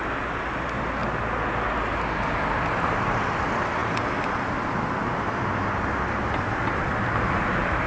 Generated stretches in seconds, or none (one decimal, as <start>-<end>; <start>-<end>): none